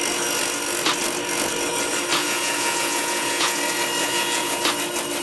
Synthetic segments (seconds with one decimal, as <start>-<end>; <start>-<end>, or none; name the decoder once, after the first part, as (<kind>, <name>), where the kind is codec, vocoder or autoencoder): 2.2-3.6 (vocoder, Vocos); 4.0-4.6